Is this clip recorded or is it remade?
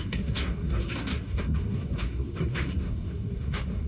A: remade